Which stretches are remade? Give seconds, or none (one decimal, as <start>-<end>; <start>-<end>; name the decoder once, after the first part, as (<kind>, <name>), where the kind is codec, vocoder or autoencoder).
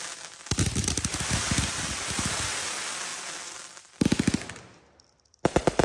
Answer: none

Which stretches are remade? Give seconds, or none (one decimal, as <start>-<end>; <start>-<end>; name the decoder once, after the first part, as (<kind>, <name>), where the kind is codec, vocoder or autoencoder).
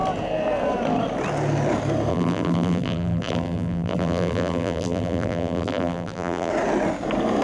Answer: 2.1-6.5 (vocoder, BigVGAN v2)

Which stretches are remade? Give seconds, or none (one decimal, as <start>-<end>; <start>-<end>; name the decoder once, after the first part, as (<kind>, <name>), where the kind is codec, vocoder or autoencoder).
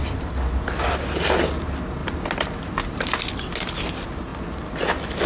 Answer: 0.0-1.1 (vocoder, BigVGAN v2); 2.0-3.6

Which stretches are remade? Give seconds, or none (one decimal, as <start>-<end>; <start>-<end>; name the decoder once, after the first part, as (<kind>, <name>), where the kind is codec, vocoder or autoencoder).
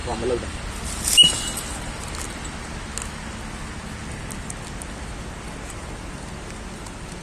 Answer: 0.0-0.6 (vocoder, BigVGAN v2)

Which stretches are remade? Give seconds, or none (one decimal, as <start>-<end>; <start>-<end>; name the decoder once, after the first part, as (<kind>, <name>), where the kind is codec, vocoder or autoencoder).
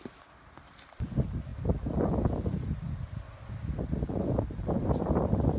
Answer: none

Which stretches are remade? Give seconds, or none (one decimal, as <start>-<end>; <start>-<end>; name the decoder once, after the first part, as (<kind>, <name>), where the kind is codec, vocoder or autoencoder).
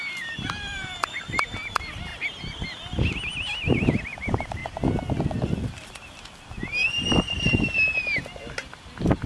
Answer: 0.0-2.1 (vocoder, BigVGAN v2); 4.0-4.6; 6.0-9.3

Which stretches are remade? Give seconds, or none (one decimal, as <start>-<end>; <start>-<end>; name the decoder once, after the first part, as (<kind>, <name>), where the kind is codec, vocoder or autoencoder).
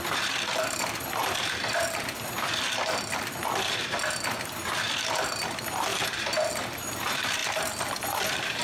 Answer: 0.0-5.9 (vocoder, BigVGAN v2); 6.5-8.6